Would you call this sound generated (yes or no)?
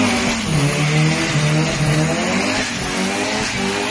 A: no